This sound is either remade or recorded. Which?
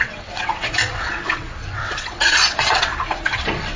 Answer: remade